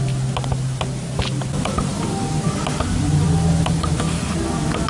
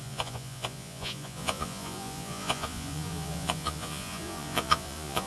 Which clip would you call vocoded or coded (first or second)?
second